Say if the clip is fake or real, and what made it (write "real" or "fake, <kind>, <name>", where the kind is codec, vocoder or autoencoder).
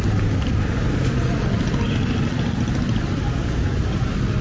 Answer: real